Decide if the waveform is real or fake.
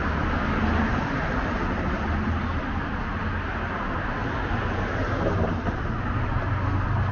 real